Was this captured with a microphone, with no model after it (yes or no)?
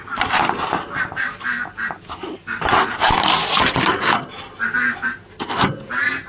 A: yes